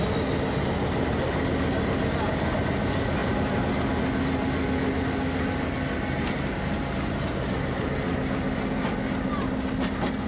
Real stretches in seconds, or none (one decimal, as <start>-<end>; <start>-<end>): 0.0-10.3